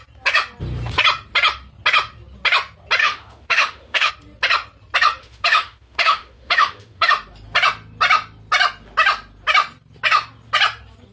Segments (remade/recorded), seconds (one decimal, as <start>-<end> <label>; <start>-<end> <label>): 0.0-3.0 recorded; 3.0-4.1 remade; 4.1-5.2 recorded; 5.2-7.1 remade; 7.1-11.1 recorded